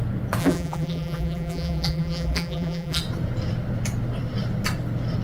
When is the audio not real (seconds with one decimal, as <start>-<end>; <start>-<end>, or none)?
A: 0.4-3.0